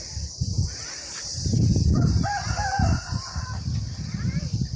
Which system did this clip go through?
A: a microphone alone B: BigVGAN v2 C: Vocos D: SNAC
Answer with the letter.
B